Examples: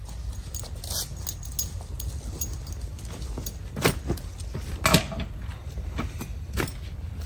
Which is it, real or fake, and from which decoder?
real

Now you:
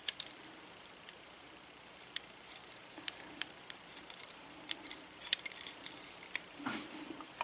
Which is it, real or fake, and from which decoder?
fake, vocoder, BigVGAN v2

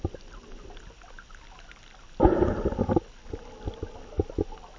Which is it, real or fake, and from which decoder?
real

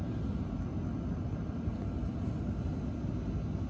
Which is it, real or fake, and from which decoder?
real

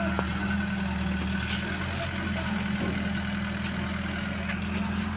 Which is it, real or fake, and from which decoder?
real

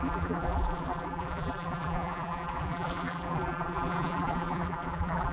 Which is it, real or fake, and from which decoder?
fake, vocoder, BigVGAN v2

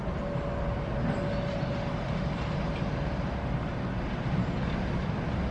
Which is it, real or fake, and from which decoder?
real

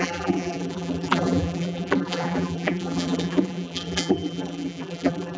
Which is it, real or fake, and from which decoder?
fake, vocoder, BigVGAN v2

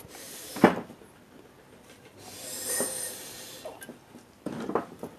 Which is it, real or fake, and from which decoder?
real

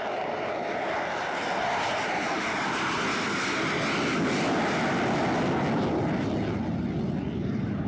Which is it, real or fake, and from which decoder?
real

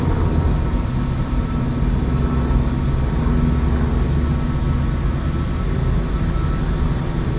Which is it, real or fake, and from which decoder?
real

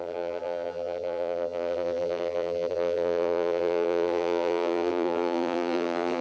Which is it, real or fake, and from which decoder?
fake, vocoder, BigVGAN v2